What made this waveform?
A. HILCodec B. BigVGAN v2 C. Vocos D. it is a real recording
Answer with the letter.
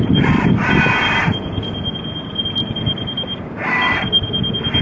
D